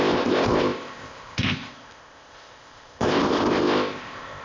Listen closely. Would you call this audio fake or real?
fake